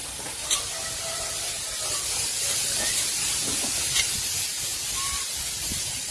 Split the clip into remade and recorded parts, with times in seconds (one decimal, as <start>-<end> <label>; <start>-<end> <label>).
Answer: 0.0-6.1 recorded